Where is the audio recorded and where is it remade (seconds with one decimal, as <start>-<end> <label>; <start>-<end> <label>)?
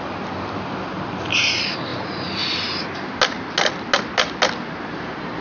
0.0-5.4 recorded